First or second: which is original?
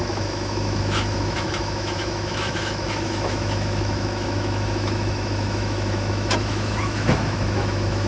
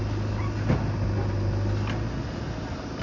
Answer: second